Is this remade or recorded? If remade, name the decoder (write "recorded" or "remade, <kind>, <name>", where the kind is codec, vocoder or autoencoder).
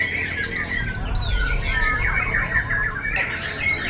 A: recorded